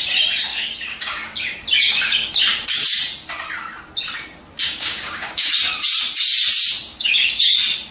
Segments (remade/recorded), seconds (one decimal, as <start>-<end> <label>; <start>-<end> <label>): 0.0-0.5 recorded; 0.5-1.5 remade; 1.5-1.9 recorded; 1.9-2.4 remade; 2.4-4.6 recorded; 4.6-5.5 remade; 5.5-6.9 recorded; 6.9-7.5 remade; 7.5-7.9 recorded